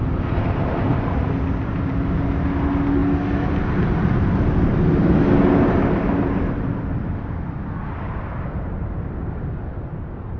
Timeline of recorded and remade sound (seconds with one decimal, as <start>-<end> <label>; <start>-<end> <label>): 0.0-10.4 recorded